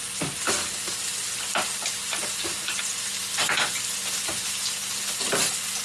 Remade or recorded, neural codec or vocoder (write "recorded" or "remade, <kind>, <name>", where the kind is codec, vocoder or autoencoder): recorded